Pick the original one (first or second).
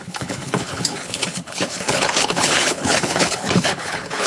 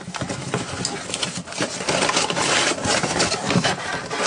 second